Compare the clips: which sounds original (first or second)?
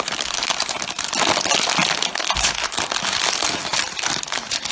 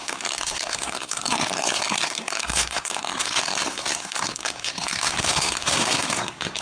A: first